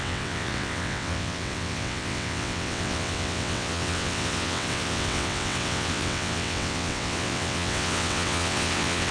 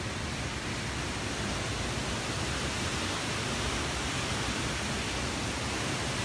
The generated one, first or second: first